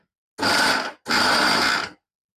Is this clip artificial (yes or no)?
no